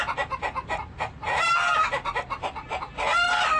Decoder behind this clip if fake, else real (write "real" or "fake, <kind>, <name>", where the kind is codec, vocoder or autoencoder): real